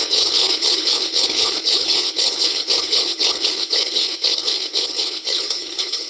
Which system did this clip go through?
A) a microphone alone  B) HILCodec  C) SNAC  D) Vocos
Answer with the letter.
B